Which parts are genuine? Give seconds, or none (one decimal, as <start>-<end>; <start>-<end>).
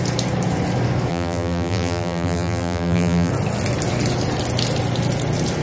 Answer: 0.0-1.1; 3.3-5.6